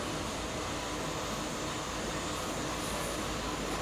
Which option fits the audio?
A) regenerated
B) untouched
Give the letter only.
B